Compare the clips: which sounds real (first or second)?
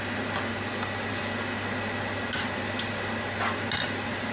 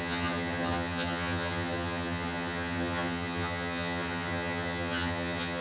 first